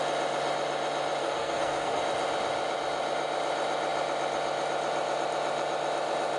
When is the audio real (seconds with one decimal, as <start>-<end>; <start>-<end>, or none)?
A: 0.0-1.2; 2.0-6.4